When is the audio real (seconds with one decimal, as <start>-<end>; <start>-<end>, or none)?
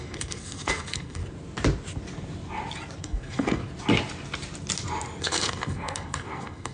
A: 1.2-3.0; 3.6-5.2